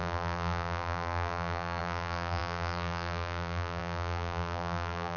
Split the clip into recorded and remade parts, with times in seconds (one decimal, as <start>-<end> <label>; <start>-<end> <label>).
0.0-5.2 remade